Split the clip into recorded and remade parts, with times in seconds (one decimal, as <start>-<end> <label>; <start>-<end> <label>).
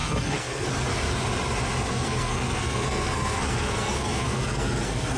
0.0-0.7 remade; 0.7-1.9 recorded; 1.9-5.2 remade